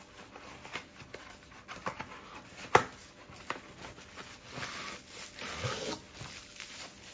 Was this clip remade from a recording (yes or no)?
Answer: no